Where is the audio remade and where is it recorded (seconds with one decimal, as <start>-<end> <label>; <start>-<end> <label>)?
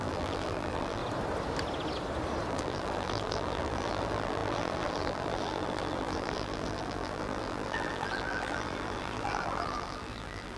0.0-1.0 remade; 1.0-2.5 recorded; 2.5-10.6 remade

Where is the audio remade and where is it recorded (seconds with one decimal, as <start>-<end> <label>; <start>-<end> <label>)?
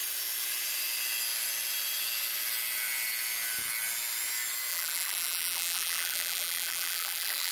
0.0-4.7 recorded; 4.7-7.5 remade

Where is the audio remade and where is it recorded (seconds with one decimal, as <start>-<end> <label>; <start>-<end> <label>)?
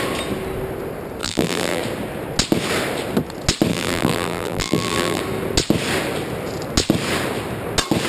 0.0-1.2 recorded; 1.2-1.8 remade; 1.8-3.7 recorded; 3.7-5.2 remade; 5.2-8.1 recorded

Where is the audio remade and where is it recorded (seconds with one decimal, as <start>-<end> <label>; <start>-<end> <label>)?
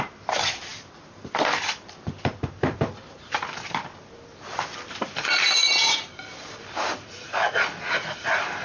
0.0-5.7 remade; 5.7-8.2 recorded; 8.2-8.6 remade